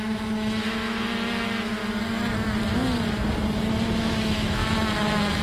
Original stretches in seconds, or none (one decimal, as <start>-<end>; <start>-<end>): 1.8-4.0